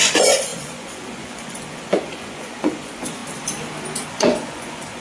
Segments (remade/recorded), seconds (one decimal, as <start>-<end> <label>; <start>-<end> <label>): 0.0-3.2 remade; 3.2-4.1 recorded; 4.1-5.0 remade